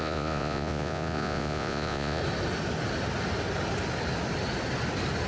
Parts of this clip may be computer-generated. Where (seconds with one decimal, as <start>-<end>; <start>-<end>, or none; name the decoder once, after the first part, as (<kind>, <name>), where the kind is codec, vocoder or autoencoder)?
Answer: 0.0-2.2 (vocoder, Vocos)